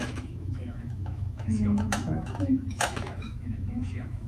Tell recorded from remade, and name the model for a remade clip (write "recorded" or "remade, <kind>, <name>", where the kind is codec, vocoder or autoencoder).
remade, autoencoder, DAC-VAE